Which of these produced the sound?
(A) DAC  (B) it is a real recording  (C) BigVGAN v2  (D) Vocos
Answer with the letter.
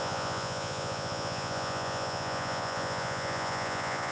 D